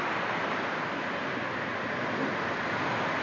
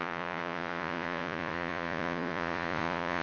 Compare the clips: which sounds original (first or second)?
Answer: first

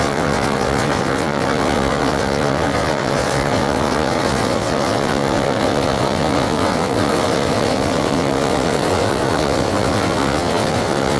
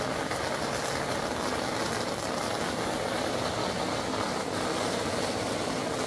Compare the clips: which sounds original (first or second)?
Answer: second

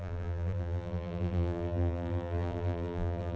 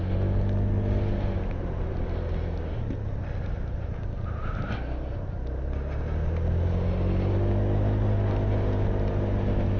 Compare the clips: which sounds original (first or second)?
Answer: second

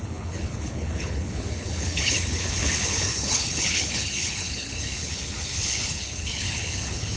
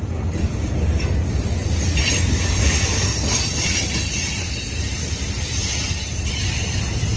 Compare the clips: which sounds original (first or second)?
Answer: second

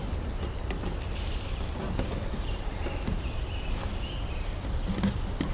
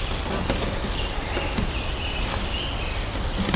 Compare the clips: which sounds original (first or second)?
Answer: second